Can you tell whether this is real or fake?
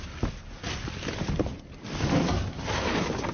real